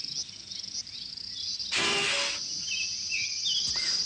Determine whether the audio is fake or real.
real